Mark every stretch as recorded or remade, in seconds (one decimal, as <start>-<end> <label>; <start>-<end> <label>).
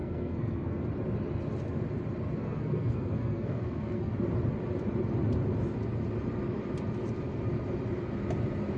0.0-0.8 remade; 0.8-2.4 recorded; 2.4-4.1 remade; 4.1-8.8 recorded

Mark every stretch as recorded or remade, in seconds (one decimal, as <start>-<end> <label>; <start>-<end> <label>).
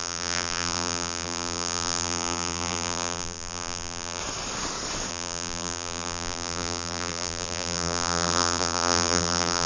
0.0-4.2 remade; 4.2-5.1 recorded; 5.1-9.7 remade